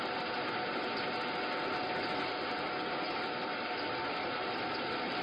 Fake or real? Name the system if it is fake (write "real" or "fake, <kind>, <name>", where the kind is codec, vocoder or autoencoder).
real